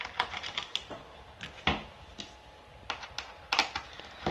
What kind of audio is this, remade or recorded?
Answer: recorded